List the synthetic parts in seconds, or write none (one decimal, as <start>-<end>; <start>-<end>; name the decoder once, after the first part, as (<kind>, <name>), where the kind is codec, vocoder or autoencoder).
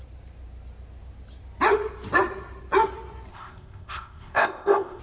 3.3-5.0 (codec, ZipCodec)